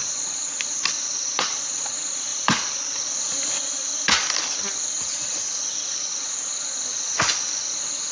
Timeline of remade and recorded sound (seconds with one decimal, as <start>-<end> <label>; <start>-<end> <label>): 0.0-8.1 recorded